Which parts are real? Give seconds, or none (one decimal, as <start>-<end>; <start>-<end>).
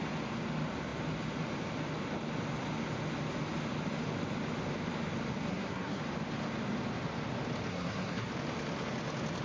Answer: 0.0-5.5; 6.0-7.7; 8.3-9.4